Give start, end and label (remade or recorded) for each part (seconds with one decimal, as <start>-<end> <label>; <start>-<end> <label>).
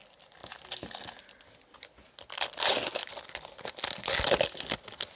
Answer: 0.0-5.2 recorded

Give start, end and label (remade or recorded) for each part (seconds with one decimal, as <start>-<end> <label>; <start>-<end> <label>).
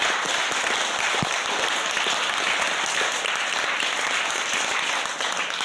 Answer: 0.0-5.6 recorded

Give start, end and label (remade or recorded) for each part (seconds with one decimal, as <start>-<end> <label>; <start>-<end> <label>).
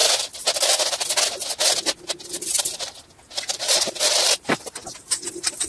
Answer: 0.0-3.4 recorded; 3.4-4.8 remade; 4.8-5.7 recorded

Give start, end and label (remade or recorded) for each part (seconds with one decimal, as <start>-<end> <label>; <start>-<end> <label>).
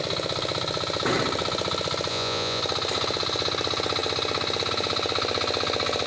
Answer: 0.0-2.1 recorded; 2.1-2.6 remade; 2.6-6.1 recorded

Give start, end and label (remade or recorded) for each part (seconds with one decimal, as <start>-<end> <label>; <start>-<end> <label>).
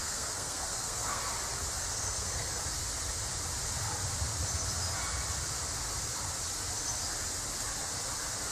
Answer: 0.0-1.2 remade; 1.2-1.9 recorded; 1.9-2.6 remade; 2.6-8.5 recorded